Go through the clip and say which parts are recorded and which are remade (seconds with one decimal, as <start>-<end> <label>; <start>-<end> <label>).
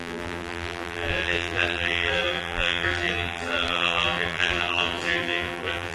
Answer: 0.0-5.9 remade